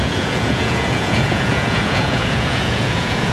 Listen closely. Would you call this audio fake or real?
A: fake